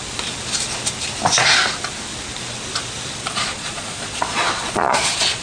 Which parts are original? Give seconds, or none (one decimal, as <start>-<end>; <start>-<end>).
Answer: 0.0-3.2